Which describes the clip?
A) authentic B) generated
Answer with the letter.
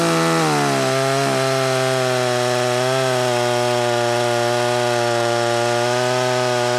A